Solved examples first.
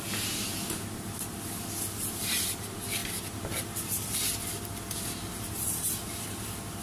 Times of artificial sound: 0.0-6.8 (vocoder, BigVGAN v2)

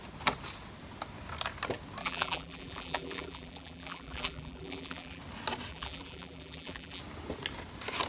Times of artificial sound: 2.0-5.2 (vocoder, BigVGAN v2); 5.7-7.0